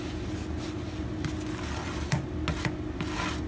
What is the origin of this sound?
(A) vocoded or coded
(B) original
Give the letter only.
B